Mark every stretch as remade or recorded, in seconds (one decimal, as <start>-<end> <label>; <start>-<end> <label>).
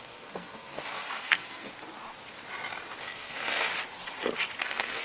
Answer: 0.0-1.7 remade; 1.7-3.0 recorded; 3.0-3.7 remade; 3.7-4.6 recorded; 4.6-5.0 remade